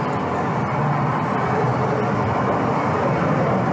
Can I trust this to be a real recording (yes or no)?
yes